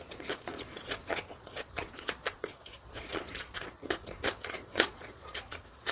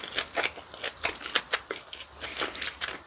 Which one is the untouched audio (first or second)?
second